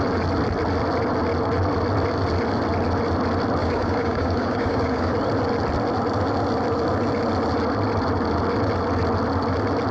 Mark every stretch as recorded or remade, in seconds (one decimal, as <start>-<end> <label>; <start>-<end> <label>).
0.0-3.6 recorded; 3.6-5.1 remade; 5.1-9.9 recorded